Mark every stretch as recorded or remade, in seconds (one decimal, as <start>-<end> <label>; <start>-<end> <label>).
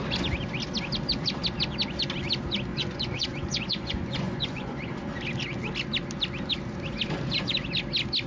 0.0-2.7 recorded; 2.7-4.9 remade; 4.9-8.3 recorded